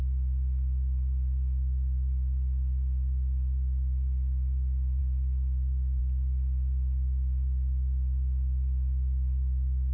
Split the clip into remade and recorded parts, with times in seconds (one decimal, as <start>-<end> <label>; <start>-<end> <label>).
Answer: 0.0-9.9 recorded

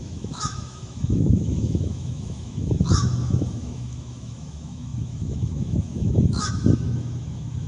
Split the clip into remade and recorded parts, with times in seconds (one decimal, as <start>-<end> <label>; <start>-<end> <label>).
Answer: 0.0-7.7 remade

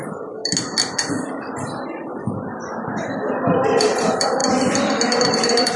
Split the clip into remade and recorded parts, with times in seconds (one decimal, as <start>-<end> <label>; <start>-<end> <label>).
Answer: 0.0-0.4 remade; 0.4-1.1 recorded; 1.1-4.4 remade; 4.4-5.3 recorded; 5.3-5.8 remade

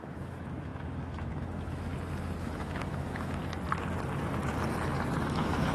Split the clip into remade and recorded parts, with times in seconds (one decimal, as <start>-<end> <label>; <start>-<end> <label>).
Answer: 0.0-1.9 remade; 1.9-2.4 recorded; 2.4-3.4 remade; 3.4-5.2 recorded; 5.2-5.7 remade

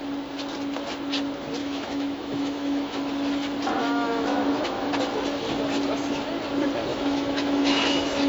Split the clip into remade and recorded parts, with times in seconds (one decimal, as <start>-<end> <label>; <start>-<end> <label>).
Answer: 0.0-1.6 recorded; 1.6-3.0 remade; 3.0-3.8 recorded; 3.8-4.9 remade; 4.9-6.9 recorded; 6.9-8.3 remade

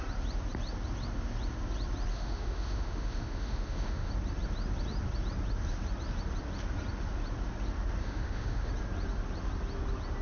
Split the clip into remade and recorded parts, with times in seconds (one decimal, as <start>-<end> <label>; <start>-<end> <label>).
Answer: 0.0-2.1 recorded; 2.1-4.1 remade; 4.1-8.0 recorded; 8.0-8.7 remade; 8.7-10.2 recorded

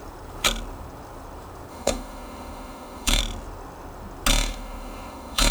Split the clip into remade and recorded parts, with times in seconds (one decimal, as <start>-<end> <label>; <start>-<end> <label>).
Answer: 0.0-1.7 recorded; 1.7-3.2 remade; 3.2-4.3 recorded; 4.3-5.5 remade